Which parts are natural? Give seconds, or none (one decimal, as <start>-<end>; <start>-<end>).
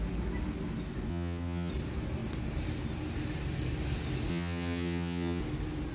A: 0.0-1.1; 1.7-4.3; 5.4-5.9